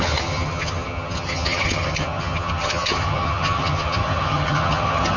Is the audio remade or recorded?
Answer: remade